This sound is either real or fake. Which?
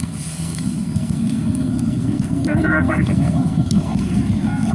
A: fake